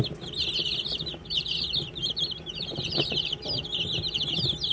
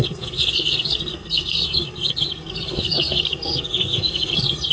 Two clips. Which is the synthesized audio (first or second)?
second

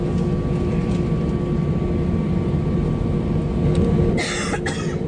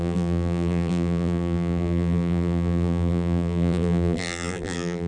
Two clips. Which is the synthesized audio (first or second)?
second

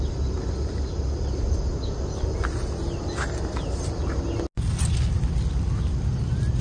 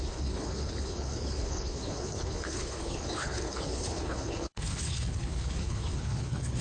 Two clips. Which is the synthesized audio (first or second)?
second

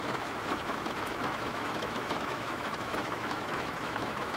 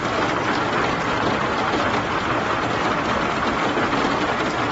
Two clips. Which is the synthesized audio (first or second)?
first